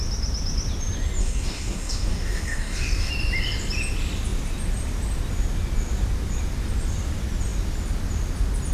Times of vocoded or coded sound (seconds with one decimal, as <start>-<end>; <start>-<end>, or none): 1.2-3.1